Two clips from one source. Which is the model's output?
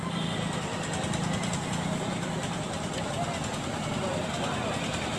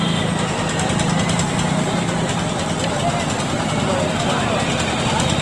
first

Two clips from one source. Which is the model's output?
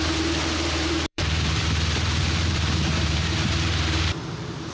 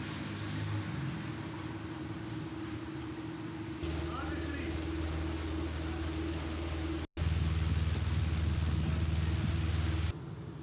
first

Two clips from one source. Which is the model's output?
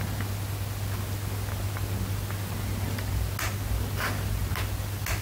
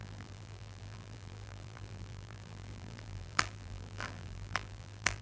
second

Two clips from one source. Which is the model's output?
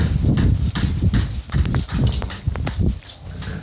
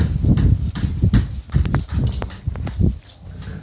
first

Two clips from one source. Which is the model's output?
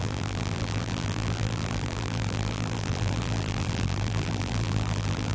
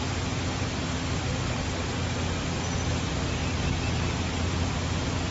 first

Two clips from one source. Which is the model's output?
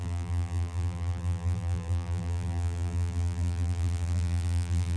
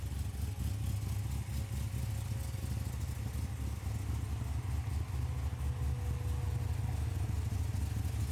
first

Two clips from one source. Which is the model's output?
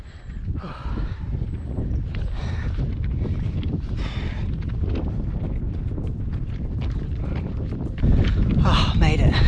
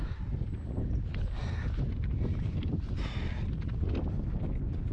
first